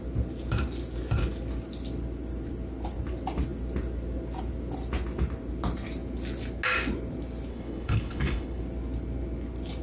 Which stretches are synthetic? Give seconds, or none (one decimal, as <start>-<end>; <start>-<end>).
7.5-8.6